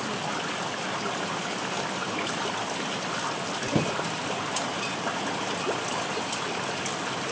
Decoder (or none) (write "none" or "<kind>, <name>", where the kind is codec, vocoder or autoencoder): none